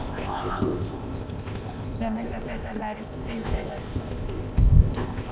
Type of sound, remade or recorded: remade